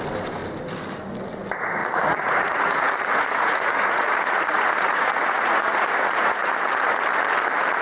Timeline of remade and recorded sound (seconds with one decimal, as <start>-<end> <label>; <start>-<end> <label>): 0.0-1.8 recorded; 1.8-6.5 remade; 6.5-7.8 recorded